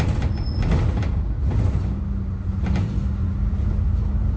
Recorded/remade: recorded